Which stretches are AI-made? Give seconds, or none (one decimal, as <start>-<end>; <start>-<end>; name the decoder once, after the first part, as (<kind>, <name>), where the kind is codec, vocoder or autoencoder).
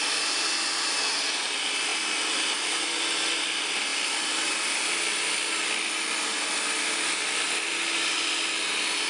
none